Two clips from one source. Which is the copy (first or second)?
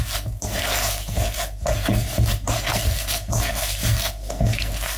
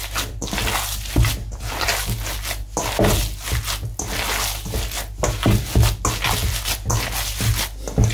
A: first